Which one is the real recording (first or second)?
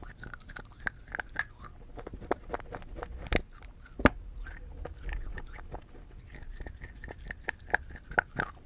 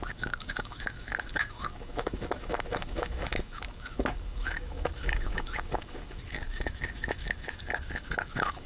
first